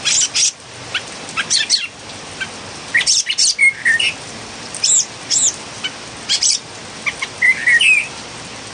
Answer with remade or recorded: recorded